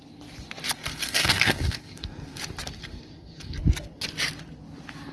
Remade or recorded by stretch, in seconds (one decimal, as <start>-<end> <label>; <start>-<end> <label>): 0.0-0.8 recorded; 0.8-2.4 remade; 2.4-2.8 recorded; 2.8-3.6 remade; 3.6-5.1 recorded